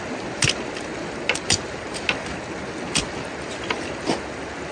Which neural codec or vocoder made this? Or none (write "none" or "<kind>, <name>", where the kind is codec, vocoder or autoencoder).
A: none